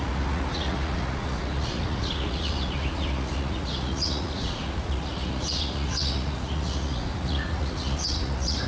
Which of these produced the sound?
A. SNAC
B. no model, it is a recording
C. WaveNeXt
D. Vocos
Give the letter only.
D